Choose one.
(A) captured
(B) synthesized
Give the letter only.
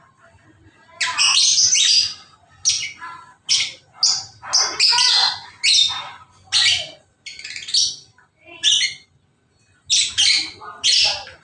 A